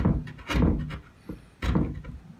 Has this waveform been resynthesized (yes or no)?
no